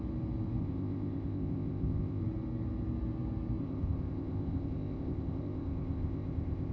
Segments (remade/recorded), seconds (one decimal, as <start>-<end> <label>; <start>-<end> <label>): 0.0-0.6 recorded; 0.6-2.2 remade; 2.2-3.6 recorded; 3.6-6.7 remade